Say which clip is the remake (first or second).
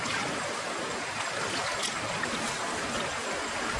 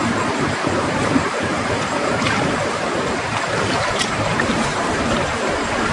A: second